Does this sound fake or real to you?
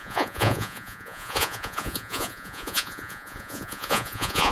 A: fake